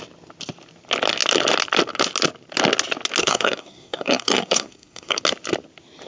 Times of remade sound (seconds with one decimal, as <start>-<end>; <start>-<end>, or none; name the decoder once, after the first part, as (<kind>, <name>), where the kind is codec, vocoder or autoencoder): 3.2-5.2 (codec, SNAC)